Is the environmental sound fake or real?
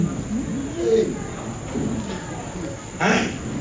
real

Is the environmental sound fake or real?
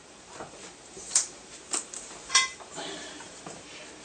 fake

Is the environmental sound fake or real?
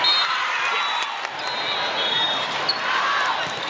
real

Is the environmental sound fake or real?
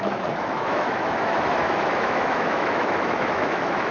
fake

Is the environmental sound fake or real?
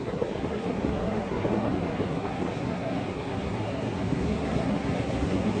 fake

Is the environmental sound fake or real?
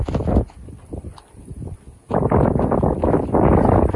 real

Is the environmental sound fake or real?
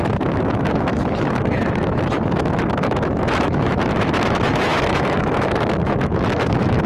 fake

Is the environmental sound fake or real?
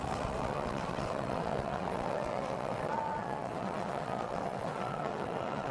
fake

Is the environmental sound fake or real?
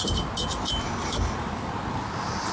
real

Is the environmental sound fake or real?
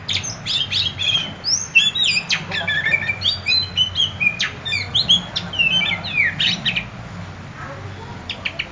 real